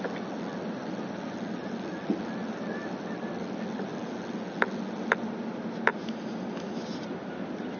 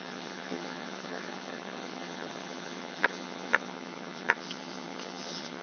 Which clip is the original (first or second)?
first